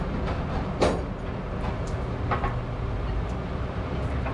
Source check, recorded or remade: recorded